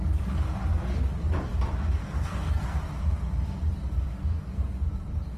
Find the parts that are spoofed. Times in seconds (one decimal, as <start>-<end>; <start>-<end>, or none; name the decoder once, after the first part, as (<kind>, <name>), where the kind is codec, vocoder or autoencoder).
2.0-2.8 (codec, SNAC); 4.2-4.8